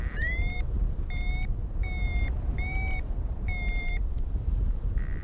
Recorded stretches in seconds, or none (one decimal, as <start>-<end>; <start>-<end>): 0.8-3.8